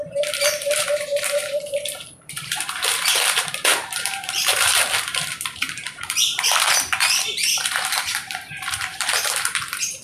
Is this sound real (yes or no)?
no